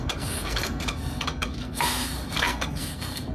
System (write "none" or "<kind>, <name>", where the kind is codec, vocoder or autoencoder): codec, SNAC